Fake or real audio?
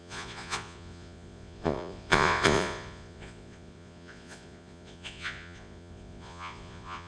fake